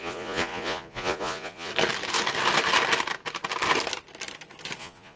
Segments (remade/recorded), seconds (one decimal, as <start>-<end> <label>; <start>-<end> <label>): 0.0-1.7 remade; 1.7-4.8 recorded; 4.8-5.2 remade